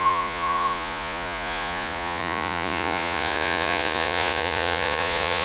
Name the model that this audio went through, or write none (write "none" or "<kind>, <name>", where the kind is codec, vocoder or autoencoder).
vocoder, Vocos